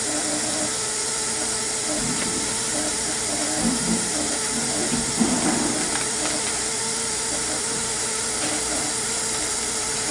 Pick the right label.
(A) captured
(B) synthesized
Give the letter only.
A